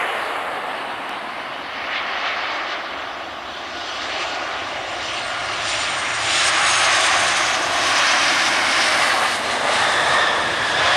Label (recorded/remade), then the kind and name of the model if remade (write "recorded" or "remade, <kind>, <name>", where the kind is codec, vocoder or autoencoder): remade, vocoder, BigVGAN v2